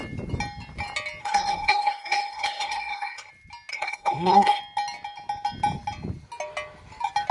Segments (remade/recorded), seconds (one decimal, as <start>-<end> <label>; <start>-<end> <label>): 0.0-1.2 recorded; 1.2-3.3 remade; 3.3-3.7 recorded; 3.7-4.6 remade; 4.6-7.3 recorded